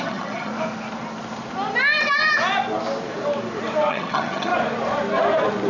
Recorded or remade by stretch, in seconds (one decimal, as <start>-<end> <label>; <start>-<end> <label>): 0.0-0.5 remade; 0.5-3.9 recorded; 3.9-4.5 remade; 4.5-5.7 recorded

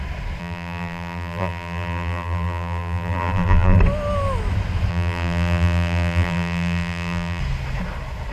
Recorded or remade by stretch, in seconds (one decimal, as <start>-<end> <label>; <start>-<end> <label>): 0.0-0.4 recorded; 0.4-3.8 remade; 3.8-4.9 recorded; 4.9-7.4 remade; 7.4-8.3 recorded